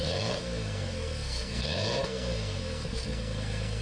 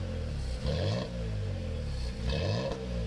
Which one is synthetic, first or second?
first